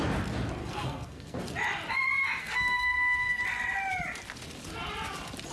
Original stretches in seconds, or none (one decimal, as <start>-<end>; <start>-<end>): 0.0-0.6; 1.4-2.4; 3.4-5.5